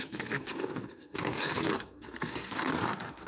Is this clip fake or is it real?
fake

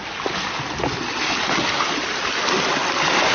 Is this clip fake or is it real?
real